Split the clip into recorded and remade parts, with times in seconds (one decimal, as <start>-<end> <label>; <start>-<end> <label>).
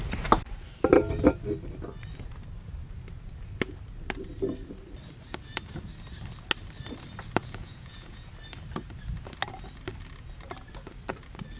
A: 0.0-7.4 recorded; 7.4-8.3 remade; 8.3-11.6 recorded